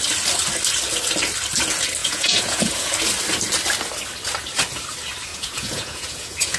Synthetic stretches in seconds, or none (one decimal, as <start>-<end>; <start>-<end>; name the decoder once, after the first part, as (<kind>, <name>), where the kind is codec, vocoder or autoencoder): 2.0-2.9 (vocoder, Vocos); 5.3-6.6